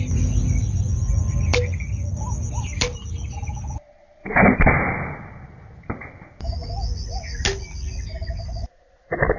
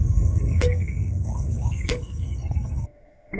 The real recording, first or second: first